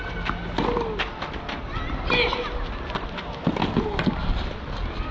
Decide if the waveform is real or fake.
real